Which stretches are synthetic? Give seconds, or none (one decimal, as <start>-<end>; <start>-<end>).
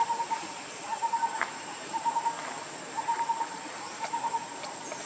0.9-2.2; 3.1-4.3